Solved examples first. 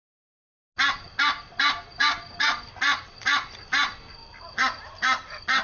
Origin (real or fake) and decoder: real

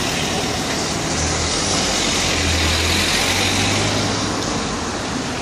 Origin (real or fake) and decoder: real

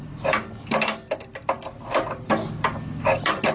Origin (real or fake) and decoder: real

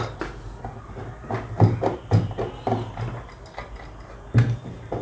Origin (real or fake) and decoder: real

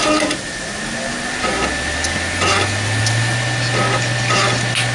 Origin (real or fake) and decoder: real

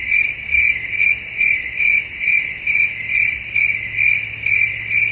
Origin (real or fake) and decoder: real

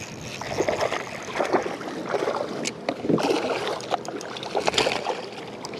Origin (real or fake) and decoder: real